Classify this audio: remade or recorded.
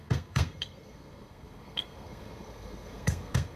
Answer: remade